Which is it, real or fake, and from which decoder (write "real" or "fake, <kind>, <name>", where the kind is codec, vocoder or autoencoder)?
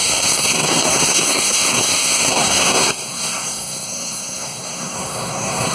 fake, codec, SNAC